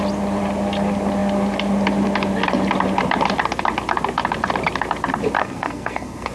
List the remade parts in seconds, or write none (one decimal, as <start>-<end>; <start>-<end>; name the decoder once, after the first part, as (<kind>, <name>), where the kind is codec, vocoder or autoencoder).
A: 5.4-6.3 (codec, SNAC)